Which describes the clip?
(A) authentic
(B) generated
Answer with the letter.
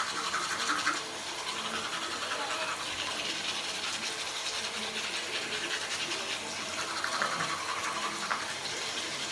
A